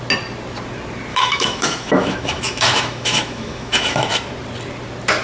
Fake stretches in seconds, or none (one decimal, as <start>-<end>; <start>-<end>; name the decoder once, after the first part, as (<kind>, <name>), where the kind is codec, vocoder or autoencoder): 1.1-4.1 (autoencoder, DAC-VAE)